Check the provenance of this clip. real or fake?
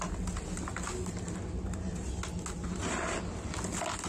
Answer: real